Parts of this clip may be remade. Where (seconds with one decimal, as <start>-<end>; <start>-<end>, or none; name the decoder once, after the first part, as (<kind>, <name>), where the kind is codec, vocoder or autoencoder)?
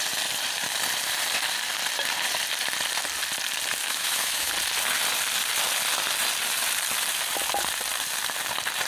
3.8-4.5 (autoencoder, DAC-VAE)